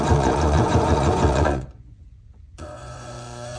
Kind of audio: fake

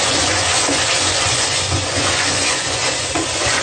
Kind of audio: fake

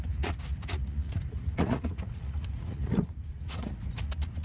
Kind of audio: fake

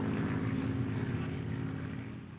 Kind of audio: real